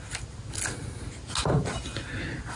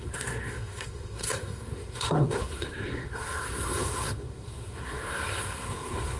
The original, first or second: first